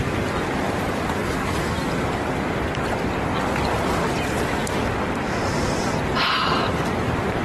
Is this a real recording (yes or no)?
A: yes